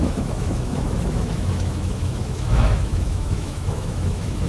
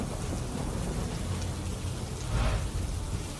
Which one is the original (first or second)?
second